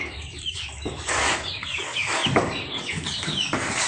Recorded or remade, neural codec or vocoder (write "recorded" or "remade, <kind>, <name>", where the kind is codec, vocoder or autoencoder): remade, codec, DAC